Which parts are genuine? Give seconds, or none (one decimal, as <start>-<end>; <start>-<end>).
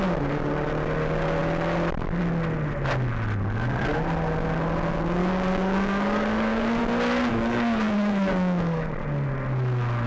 0.0-5.2; 6.8-7.3; 8.9-10.1